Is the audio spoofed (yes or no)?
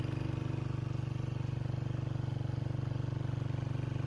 no